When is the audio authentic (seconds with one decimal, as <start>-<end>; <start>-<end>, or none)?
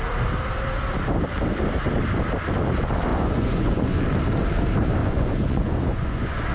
0.0-3.1; 4.0-5.0